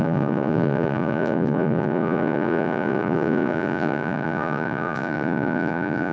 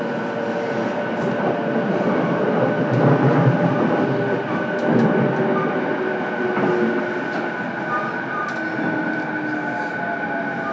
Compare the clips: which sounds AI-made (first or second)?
first